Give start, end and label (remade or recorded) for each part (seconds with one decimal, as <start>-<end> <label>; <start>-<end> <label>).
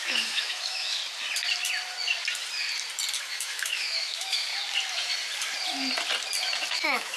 0.0-1.0 remade; 1.0-3.2 recorded; 3.2-4.5 remade; 4.5-6.7 recorded; 6.7-7.2 remade